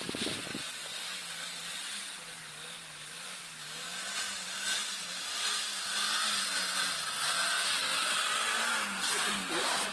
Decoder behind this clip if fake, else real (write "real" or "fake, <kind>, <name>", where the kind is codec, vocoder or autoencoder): real